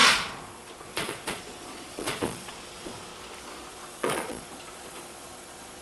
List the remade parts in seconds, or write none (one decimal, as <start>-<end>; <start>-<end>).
0.0-3.1; 3.7-5.8